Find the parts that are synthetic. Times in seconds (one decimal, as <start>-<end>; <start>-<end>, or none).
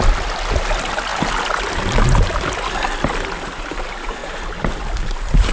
none